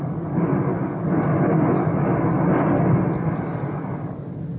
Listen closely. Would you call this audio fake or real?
real